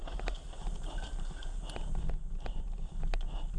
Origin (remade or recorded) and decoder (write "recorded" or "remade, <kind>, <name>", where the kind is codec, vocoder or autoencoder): recorded